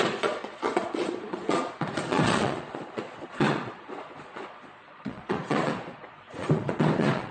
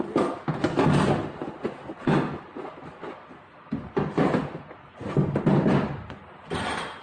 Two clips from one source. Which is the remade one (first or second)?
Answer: first